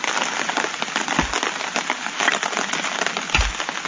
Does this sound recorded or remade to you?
recorded